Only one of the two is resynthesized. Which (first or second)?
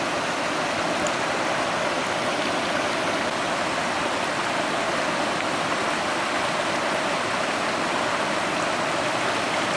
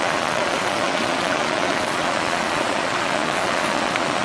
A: second